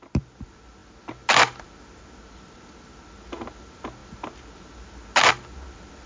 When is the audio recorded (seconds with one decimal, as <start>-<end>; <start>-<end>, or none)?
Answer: 0.0-6.1